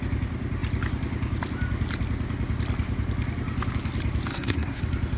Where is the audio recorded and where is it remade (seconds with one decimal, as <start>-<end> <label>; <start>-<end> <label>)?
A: 0.0-4.3 recorded; 4.3-4.8 remade; 4.8-5.2 recorded